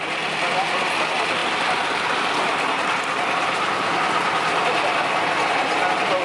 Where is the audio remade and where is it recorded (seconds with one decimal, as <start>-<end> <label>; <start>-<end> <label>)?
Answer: 0.0-1.4 recorded; 1.4-5.1 remade; 5.1-6.2 recorded